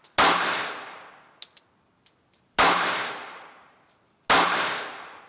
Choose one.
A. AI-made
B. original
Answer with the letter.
B